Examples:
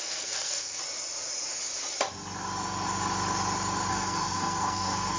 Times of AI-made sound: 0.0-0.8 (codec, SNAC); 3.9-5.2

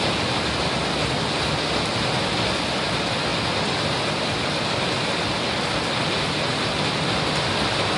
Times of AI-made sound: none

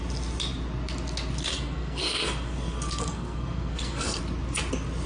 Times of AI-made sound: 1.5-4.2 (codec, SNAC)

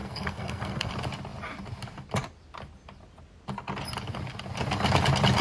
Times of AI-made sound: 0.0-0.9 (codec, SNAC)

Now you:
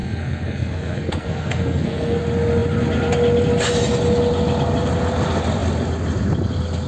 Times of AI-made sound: 0.0-2.2 (codec, SNAC)